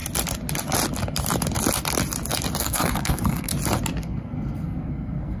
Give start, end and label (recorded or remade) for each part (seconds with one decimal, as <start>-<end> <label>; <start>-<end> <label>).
0.0-2.6 recorded; 2.6-3.5 remade; 3.5-4.0 recorded; 4.0-5.4 remade